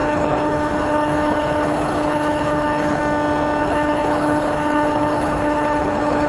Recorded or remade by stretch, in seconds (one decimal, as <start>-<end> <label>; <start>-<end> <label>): 0.0-3.0 remade; 3.0-3.6 recorded; 3.6-6.3 remade